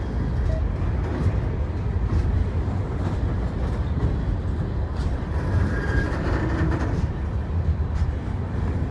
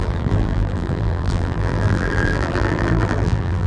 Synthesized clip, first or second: second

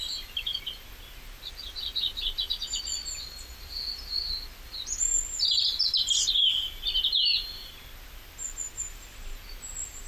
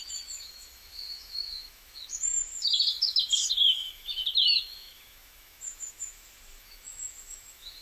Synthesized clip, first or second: second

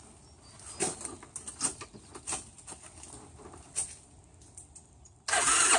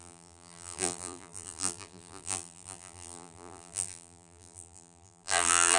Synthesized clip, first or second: second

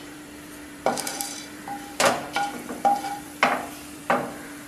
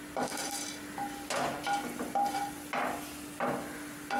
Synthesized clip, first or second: first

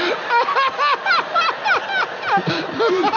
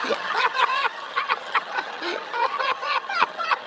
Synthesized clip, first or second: second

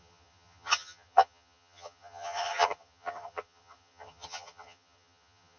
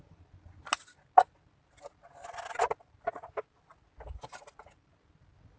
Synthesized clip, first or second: first